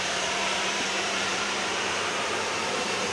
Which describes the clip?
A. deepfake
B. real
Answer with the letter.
A